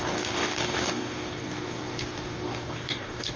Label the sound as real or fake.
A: fake